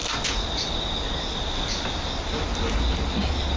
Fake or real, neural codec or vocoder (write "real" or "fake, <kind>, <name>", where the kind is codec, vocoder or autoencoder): real